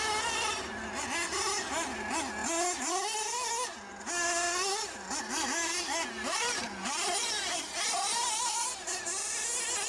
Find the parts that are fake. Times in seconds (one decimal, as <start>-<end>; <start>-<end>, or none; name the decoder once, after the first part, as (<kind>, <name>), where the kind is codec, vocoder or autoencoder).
none

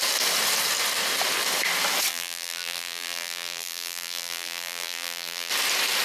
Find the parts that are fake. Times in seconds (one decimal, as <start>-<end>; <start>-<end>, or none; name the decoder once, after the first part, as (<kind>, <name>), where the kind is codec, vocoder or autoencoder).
2.1-5.5 (vocoder, BigVGAN v2)